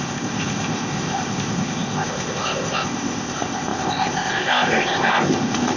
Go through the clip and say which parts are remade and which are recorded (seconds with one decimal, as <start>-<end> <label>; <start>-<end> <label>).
0.0-5.8 remade